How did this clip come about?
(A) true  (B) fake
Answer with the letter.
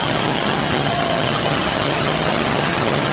B